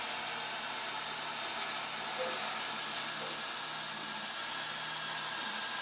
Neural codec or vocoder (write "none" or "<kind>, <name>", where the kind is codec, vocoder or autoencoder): none